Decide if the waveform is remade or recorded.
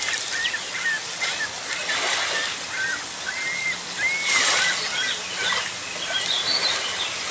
recorded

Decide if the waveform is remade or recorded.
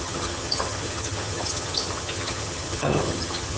remade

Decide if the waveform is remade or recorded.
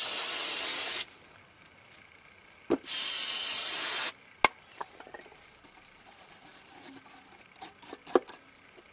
recorded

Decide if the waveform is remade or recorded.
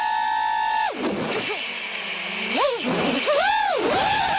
recorded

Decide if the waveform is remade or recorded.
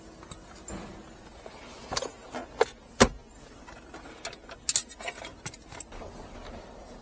recorded